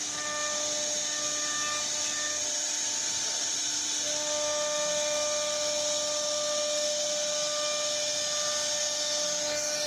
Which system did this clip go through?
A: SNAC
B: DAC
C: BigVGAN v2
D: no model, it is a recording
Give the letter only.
D